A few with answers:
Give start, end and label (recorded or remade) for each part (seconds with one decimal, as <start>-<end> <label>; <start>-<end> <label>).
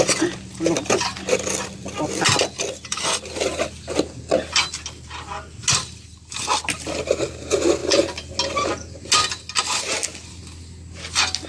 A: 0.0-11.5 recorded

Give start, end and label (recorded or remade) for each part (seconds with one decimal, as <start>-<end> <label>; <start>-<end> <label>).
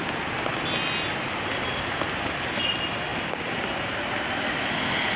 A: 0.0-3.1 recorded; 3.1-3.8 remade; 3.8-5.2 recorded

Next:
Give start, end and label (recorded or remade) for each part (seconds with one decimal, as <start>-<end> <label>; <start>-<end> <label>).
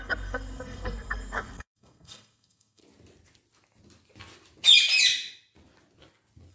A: 0.0-2.8 remade; 2.8-6.5 recorded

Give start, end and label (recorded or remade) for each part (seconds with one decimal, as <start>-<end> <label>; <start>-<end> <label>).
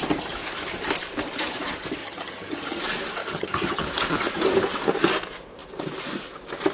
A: 0.0-2.0 recorded; 2.0-2.8 remade; 2.8-3.2 recorded; 3.2-3.8 remade; 3.8-6.7 recorded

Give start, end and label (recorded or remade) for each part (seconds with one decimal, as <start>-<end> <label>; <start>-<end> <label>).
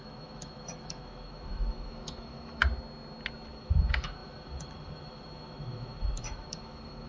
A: 0.0-2.6 remade; 2.6-3.5 recorded; 3.5-7.1 remade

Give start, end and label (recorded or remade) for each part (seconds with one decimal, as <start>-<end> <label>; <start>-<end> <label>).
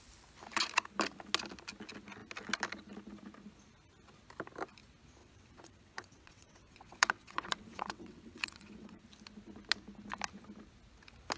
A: 0.0-5.2 recorded; 5.2-9.0 remade; 9.0-11.4 recorded